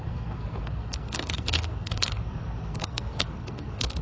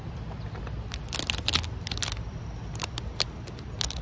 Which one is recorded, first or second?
second